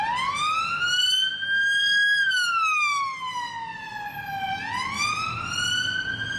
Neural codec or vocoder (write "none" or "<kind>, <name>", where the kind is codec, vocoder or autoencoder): none